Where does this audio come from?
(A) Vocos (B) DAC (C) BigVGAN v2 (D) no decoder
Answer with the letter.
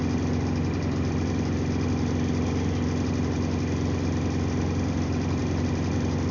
D